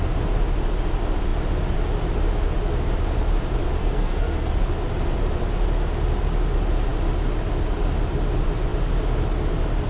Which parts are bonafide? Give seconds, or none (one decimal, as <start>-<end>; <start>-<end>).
0.0-3.8; 4.5-9.9